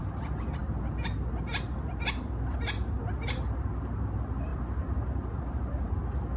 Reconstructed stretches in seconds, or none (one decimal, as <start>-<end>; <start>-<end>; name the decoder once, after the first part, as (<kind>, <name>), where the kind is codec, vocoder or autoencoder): 4.5-6.0 (vocoder, BigVGAN v2)